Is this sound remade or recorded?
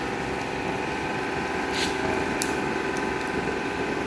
recorded